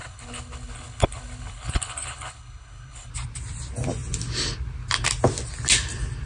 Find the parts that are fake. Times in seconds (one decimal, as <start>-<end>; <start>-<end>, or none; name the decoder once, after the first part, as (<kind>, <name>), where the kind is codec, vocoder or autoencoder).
0.0-3.1 (codec, HILCodec)